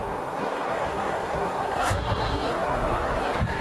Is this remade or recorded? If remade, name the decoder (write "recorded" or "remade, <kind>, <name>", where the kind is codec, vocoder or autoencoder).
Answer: remade, codec, SNAC